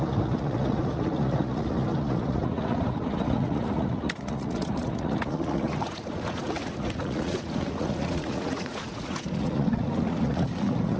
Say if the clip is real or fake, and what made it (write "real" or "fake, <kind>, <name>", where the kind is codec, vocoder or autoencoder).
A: fake, vocoder, Vocos